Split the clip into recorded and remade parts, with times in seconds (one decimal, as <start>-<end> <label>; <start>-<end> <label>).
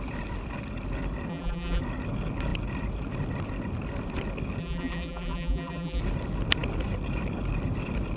0.0-1.3 recorded; 1.3-1.8 remade; 1.8-4.6 recorded; 4.6-6.0 remade; 6.0-8.2 recorded